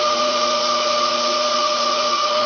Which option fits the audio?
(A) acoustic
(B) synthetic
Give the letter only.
B